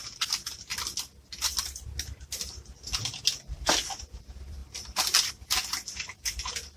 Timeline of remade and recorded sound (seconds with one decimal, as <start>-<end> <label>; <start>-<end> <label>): 0.0-0.7 remade; 0.7-3.5 recorded; 3.5-6.8 remade